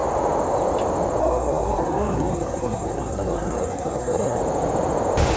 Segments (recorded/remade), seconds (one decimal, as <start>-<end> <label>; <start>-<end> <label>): 0.0-1.2 recorded; 1.2-4.4 remade; 4.4-5.4 recorded